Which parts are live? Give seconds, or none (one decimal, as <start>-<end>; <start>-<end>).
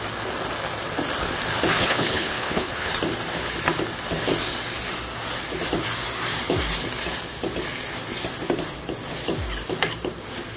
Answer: 0.0-1.8; 2.9-10.6